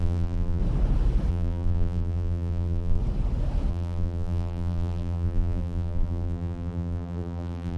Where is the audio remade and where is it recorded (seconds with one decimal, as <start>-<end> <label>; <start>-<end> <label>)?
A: 0.0-0.6 remade; 0.6-1.3 recorded; 1.3-3.0 remade; 3.0-3.7 recorded; 3.7-7.8 remade